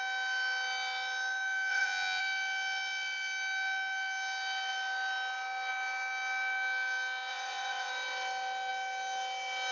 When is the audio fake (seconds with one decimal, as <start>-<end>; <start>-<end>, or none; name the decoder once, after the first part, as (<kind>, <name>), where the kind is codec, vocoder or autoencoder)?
1.7-2.2 (vocoder, Vocos); 7.3-7.9